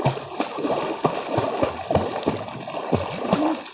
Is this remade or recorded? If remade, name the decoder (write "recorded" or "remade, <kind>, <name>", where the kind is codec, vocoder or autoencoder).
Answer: recorded